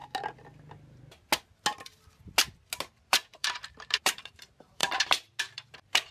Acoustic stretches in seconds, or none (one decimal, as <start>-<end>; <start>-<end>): 0.0-2.9